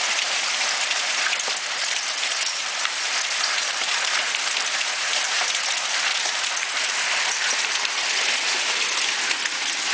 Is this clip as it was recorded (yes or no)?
no